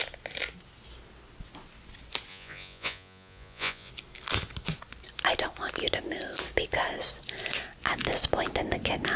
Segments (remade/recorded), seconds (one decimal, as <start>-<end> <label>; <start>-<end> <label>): 0.0-2.3 recorded; 2.3-3.9 remade; 3.9-9.2 recorded